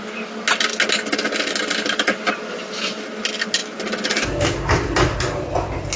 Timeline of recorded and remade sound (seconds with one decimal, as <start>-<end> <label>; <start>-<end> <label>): 0.0-6.0 recorded